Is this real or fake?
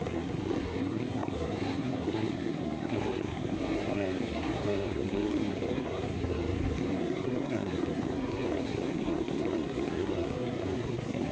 fake